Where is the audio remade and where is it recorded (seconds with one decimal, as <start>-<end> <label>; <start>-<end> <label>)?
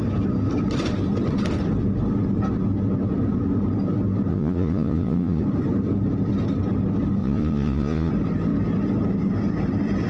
0.0-4.3 recorded; 4.3-5.4 remade; 5.4-7.2 recorded; 7.2-8.1 remade; 8.1-10.1 recorded